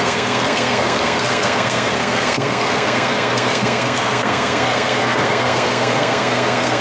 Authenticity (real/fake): fake